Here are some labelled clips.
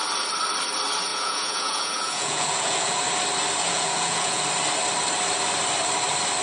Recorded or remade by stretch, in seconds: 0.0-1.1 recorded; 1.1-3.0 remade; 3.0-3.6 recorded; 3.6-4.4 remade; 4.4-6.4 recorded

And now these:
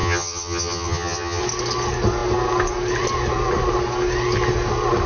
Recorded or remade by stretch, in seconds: 0.0-1.4 remade; 1.4-5.1 recorded

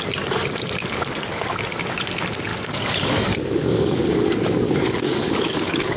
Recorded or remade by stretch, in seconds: 0.0-0.8 recorded; 0.8-1.6 remade; 1.6-2.5 recorded; 2.5-6.0 remade